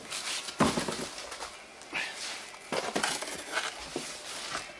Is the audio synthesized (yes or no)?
no